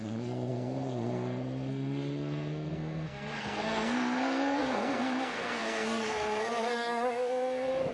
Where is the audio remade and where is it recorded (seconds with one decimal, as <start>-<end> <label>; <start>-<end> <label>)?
0.0-7.9 remade